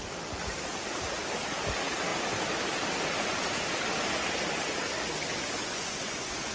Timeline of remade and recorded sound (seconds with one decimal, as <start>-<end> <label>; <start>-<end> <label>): 0.0-5.6 recorded; 5.6-6.5 remade